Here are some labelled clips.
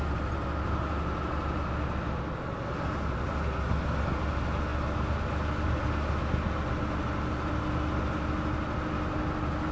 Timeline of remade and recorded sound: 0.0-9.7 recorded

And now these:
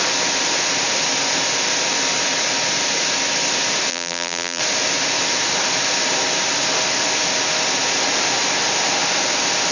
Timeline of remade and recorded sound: 0.0-3.9 recorded; 3.9-4.6 remade; 4.6-9.7 recorded